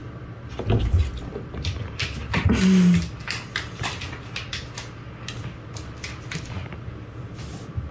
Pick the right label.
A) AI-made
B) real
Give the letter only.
B